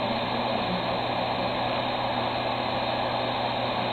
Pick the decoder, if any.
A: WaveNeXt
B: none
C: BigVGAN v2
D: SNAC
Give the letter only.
B